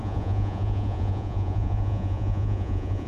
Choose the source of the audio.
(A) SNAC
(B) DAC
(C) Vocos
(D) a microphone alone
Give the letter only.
C